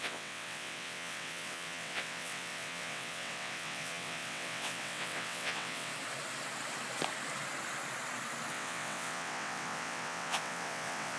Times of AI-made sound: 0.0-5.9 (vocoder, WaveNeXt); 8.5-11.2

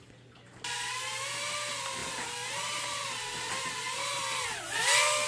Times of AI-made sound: none

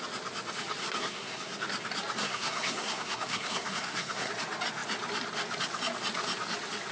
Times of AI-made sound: 0.8-1.6 (codec, SNAC); 2.2-4.3

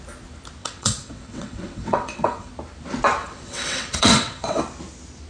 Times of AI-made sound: 0.6-2.5 (vocoder, WaveNeXt); 3.2-4.6